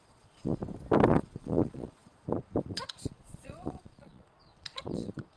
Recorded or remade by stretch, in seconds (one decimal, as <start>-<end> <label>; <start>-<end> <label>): 0.0-0.6 remade; 0.6-1.1 recorded; 1.1-5.4 remade